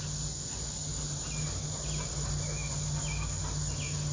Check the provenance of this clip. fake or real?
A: real